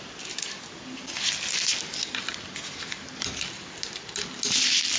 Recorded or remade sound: recorded